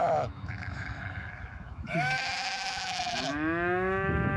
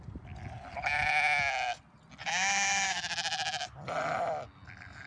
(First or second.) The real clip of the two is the second